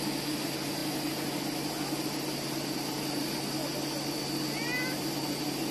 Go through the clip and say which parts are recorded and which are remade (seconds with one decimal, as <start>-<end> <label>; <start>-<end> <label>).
0.0-5.7 recorded